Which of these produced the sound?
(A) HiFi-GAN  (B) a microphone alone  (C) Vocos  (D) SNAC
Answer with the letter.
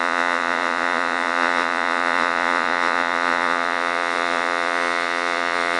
C